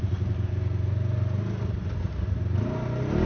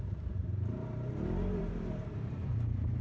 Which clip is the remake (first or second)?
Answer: second